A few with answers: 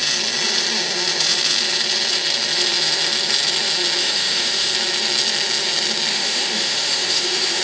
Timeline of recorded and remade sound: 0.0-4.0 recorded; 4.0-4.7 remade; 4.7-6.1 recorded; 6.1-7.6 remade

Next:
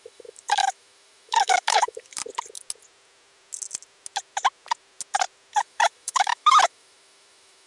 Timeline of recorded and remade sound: 0.0-2.2 remade; 2.2-5.6 recorded; 5.6-7.7 remade

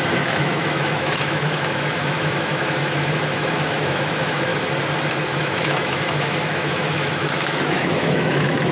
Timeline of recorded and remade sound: 0.0-4.5 remade; 4.5-5.4 recorded; 5.4-8.7 remade